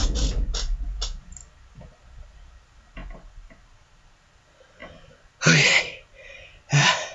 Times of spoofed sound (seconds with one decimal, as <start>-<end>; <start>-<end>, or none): none